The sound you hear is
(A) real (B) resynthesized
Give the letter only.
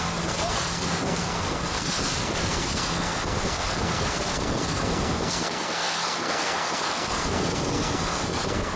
B